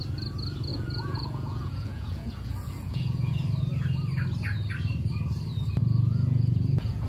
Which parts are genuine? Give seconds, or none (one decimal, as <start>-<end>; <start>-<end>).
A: 0.0-0.7; 3.3-5.8